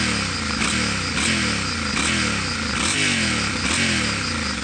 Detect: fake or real real